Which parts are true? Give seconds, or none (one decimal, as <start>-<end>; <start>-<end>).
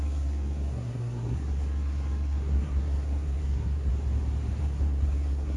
3.9-4.6